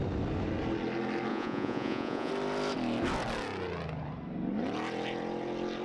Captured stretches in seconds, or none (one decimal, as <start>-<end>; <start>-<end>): 0.0-1.3; 2.3-5.8